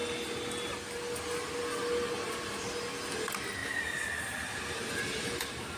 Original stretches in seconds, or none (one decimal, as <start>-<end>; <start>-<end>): 0.0-5.8